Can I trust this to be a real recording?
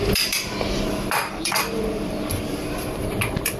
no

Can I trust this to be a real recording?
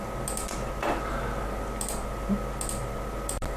yes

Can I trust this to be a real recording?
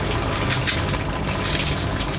yes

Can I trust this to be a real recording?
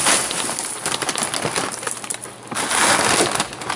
yes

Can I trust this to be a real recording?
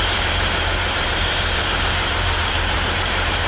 no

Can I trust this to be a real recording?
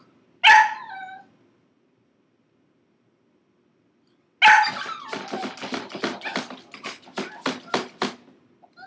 yes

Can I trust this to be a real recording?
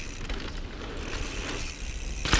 yes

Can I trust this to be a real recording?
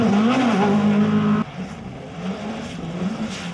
yes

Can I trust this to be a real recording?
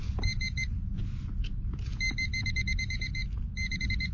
yes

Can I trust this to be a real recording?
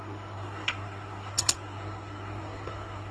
no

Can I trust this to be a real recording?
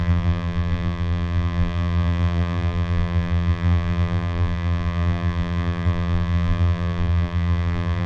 no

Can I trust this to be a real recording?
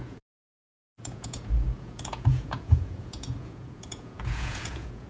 no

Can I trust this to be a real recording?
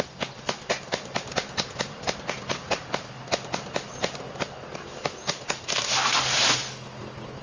yes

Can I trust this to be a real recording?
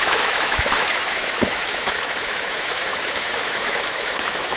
no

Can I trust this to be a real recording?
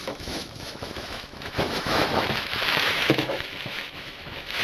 no